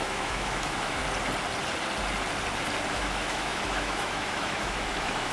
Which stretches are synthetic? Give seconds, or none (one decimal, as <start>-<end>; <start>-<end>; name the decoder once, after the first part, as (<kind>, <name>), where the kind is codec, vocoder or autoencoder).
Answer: 0.0-1.0 (autoencoder, DAC-VAE); 2.9-5.3